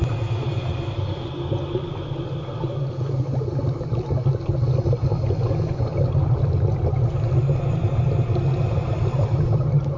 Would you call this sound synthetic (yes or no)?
no